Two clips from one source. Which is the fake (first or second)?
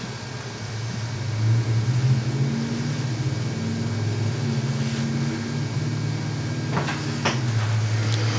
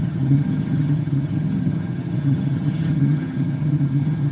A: second